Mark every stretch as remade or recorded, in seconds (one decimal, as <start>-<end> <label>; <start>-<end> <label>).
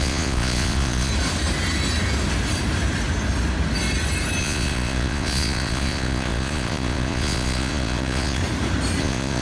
0.0-1.1 remade; 1.1-4.4 recorded; 4.4-8.4 remade; 8.4-9.0 recorded; 9.0-9.4 remade